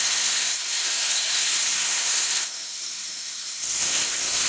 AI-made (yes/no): yes